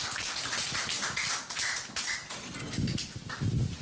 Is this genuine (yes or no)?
yes